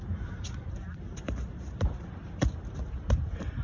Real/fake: fake